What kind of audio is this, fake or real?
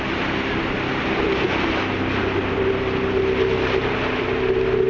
real